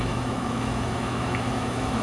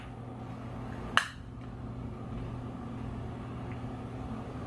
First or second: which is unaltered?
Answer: second